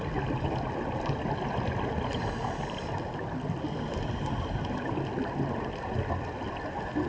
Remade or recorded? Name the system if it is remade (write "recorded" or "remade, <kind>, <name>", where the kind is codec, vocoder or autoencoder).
recorded